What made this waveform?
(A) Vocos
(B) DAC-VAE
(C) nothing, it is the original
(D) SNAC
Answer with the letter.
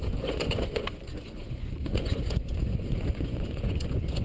A